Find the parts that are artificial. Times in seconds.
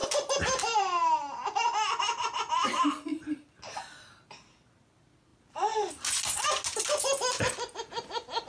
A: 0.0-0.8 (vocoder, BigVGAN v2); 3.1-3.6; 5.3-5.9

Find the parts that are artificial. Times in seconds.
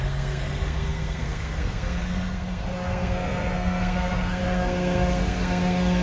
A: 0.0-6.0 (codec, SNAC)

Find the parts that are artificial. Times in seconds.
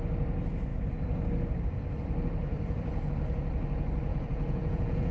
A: 4.1-5.1 (vocoder, Vocos)